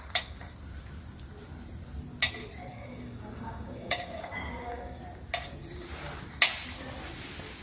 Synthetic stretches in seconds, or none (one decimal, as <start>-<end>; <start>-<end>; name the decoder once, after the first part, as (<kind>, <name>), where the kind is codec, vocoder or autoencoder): 2.7-5.0 (codec, DAC)